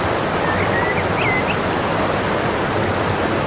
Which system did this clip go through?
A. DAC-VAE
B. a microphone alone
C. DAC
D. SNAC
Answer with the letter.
B